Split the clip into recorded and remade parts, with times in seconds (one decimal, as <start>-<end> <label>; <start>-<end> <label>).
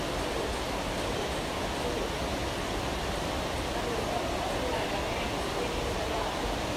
0.0-2.4 remade; 2.4-6.8 recorded